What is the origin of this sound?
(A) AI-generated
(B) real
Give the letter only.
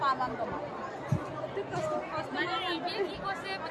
B